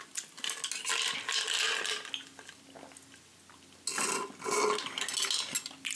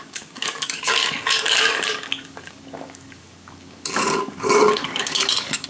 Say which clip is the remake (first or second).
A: second